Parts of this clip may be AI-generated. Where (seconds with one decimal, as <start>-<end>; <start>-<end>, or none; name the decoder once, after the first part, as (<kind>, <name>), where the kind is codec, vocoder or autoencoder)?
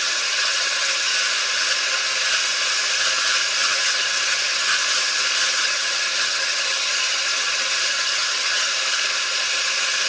0.0-1.1 (vocoder, HiFi-GAN); 3.6-4.8; 5.6-8.7